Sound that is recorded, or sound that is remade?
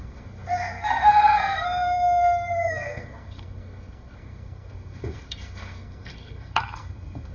remade